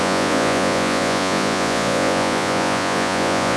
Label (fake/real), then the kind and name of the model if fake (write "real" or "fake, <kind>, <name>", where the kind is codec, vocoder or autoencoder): fake, vocoder, Vocos